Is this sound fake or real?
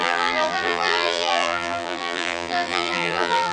fake